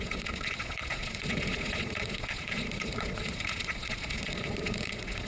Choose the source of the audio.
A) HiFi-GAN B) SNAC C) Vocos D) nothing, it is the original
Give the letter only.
C